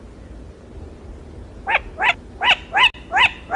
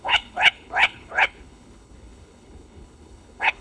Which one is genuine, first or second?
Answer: first